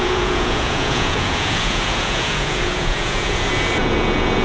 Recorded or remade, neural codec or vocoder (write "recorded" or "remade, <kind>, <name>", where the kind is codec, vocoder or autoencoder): remade, vocoder, Vocos